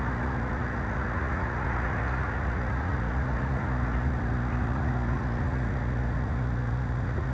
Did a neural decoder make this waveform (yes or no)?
yes